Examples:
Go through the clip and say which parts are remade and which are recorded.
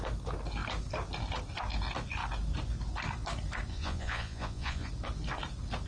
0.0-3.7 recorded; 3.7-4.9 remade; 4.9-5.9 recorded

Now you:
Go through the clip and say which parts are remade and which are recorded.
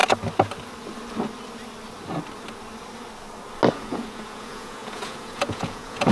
0.0-3.7 recorded; 3.7-6.1 remade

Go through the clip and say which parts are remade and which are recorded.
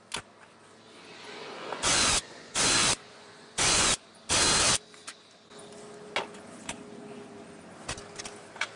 0.0-1.1 recorded; 1.1-4.1 remade; 4.1-8.8 recorded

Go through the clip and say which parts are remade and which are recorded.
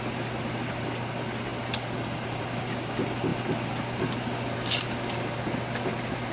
0.0-6.3 recorded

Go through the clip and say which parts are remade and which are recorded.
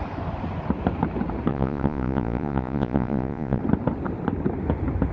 0.0-1.5 recorded; 1.5-3.6 remade; 3.6-5.1 recorded